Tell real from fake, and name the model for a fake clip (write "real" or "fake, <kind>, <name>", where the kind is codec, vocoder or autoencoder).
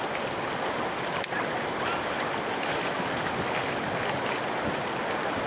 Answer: real